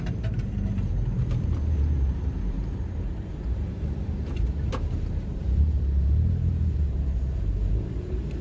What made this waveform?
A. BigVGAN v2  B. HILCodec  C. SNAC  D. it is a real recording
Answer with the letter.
A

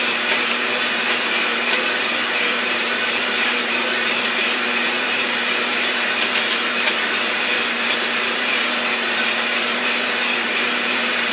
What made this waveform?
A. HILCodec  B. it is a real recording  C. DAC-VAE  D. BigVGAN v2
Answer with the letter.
D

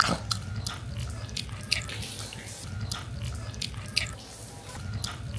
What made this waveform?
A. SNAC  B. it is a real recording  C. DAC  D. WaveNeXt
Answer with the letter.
B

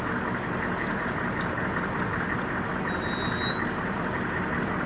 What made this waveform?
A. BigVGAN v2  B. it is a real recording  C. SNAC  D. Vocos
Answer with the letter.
B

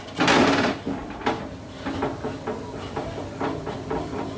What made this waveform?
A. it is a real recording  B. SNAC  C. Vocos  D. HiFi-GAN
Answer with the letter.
A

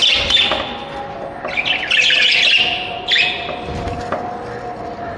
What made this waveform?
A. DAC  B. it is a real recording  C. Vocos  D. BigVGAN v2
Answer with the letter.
B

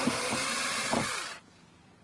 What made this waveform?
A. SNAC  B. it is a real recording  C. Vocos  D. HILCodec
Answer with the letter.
B